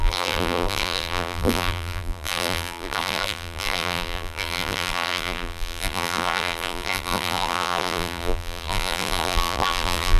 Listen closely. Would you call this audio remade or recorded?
remade